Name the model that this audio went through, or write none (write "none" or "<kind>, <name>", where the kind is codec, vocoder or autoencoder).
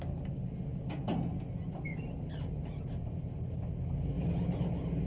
none